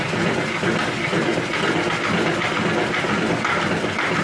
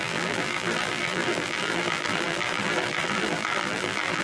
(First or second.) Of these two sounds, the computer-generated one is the second